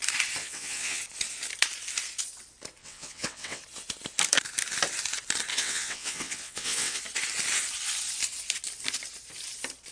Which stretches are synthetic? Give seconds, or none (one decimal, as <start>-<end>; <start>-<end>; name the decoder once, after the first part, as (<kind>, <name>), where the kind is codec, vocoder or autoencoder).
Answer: 0.4-1.0 (vocoder, WaveNeXt); 2.8-3.6; 5.5-7.0

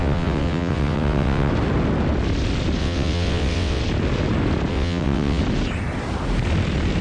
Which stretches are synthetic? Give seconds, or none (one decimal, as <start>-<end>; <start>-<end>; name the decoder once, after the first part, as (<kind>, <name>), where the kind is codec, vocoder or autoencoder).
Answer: 0.0-1.5 (vocoder, WaveNeXt); 2.8-3.8; 4.7-5.4

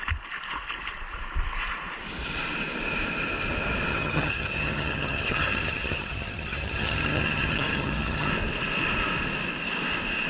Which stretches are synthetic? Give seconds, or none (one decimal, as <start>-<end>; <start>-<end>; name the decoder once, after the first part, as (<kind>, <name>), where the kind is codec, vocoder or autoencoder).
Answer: 3.9-8.3 (vocoder, HiFi-GAN)

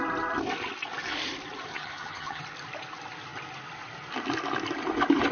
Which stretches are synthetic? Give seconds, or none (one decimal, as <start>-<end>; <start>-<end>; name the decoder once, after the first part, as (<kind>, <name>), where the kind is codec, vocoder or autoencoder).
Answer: 1.7-2.4 (vocoder, HiFi-GAN)

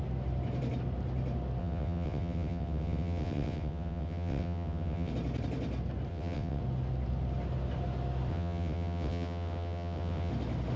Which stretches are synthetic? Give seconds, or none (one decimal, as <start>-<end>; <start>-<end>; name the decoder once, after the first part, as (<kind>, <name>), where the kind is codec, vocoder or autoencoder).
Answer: 1.6-5.1 (vocoder, WaveNeXt); 6.1-6.6; 8.3-10.3